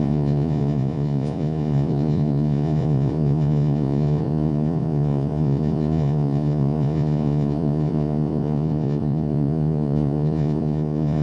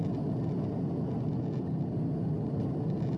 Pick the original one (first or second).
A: second